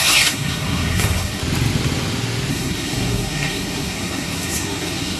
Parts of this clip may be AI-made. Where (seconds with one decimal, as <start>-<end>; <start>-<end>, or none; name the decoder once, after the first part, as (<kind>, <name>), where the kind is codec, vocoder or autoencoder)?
0.0-1.4 (codec, SNAC); 2.5-5.2